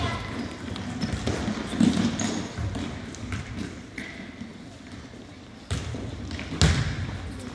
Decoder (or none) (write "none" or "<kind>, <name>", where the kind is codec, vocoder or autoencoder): none